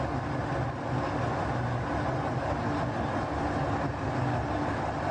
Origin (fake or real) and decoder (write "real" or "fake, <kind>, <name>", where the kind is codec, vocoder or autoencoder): real